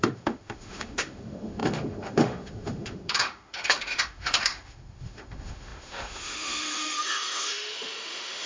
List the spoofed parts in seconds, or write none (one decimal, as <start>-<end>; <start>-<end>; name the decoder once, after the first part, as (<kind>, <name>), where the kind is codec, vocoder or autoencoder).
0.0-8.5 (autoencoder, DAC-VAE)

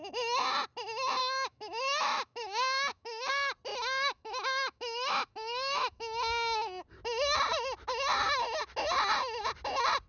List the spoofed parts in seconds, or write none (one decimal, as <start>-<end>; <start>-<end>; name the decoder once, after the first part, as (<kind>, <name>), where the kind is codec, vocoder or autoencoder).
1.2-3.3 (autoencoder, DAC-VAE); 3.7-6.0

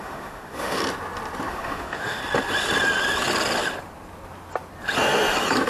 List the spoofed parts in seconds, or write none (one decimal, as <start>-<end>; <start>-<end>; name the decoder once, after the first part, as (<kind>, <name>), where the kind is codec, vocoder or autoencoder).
0.0-0.8 (autoencoder, DAC-VAE); 1.5-2.2